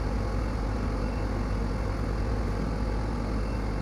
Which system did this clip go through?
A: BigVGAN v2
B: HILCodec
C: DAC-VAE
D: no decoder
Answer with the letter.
D